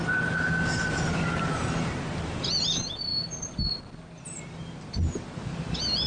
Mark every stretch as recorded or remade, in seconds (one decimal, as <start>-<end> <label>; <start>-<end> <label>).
0.0-6.1 recorded